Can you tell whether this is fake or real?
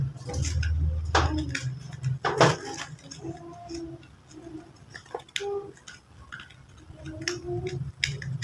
real